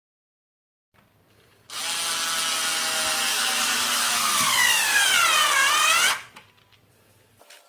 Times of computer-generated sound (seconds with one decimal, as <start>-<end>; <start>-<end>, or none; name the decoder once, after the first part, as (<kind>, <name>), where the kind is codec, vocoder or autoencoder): 3.3-5.2 (codec, DAC)